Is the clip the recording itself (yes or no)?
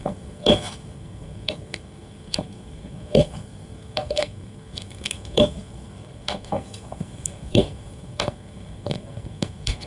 no